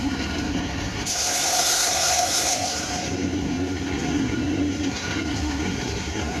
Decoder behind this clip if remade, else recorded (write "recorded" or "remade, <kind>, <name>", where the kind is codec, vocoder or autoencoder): remade, codec, SNAC